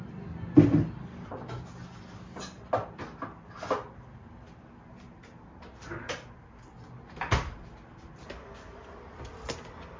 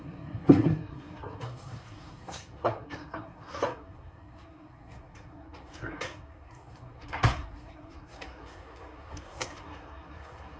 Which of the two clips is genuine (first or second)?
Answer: first